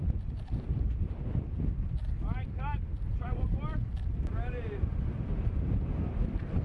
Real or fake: real